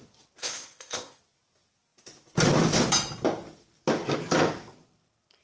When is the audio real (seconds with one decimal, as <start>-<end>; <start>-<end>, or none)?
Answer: 0.0-0.4; 1.2-5.4